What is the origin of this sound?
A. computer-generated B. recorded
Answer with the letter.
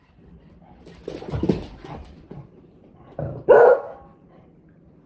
B